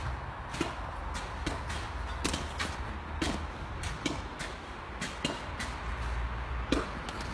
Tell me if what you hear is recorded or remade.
recorded